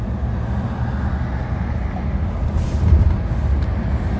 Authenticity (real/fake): real